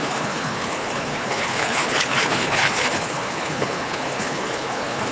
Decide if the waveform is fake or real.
fake